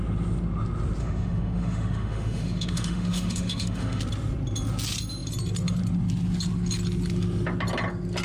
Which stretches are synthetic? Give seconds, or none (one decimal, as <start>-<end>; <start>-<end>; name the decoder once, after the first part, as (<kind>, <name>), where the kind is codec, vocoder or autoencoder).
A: 1.0-4.0 (autoencoder, DAC-VAE)